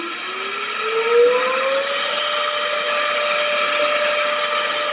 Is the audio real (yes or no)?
yes